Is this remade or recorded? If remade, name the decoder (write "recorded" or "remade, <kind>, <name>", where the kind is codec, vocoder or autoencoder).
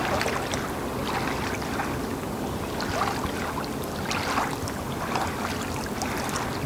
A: recorded